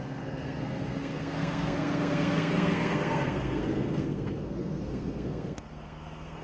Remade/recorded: remade